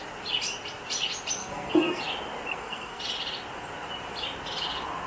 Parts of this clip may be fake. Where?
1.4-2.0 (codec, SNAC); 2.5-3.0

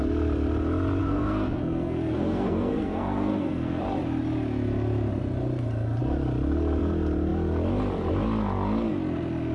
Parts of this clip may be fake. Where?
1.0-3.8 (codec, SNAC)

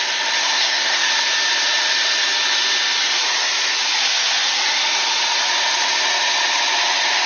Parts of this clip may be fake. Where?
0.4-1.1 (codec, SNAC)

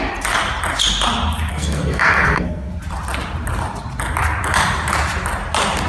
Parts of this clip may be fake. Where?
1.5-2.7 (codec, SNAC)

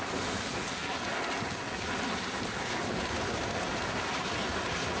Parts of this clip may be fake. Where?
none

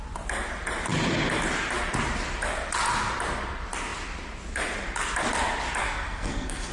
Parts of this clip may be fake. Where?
5.8-6.7 (codec, SNAC)